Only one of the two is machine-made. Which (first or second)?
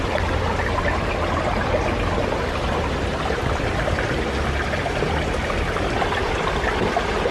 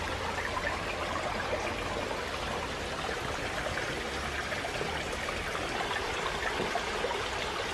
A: first